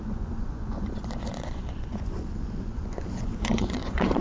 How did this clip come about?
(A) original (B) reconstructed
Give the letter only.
B